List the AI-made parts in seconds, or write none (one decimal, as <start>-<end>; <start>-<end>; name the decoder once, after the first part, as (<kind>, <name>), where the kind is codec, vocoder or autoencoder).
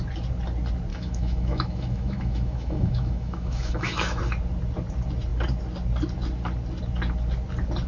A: 0.9-4.2 (autoencoder, DAC-VAE)